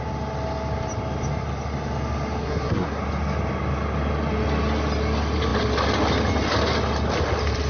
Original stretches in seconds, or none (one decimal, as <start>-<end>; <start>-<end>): 0.0-2.4; 3.0-7.7